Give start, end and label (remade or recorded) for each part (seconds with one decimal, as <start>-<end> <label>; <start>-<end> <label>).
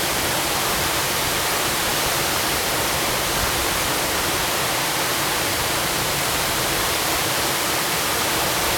0.0-1.9 recorded; 1.9-2.7 remade; 2.7-5.1 recorded; 5.1-8.8 remade